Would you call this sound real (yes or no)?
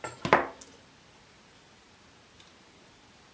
yes